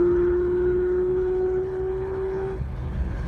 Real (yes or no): no